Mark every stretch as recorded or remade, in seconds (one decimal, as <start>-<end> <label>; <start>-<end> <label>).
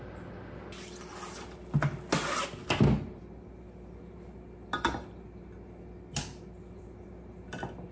0.0-7.9 recorded